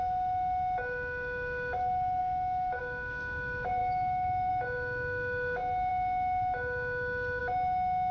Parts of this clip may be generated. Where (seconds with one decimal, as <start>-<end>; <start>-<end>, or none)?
2.2-2.8; 3.8-4.5